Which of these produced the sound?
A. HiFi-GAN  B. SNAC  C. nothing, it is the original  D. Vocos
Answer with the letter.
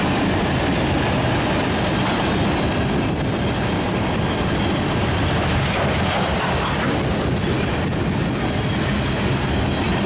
C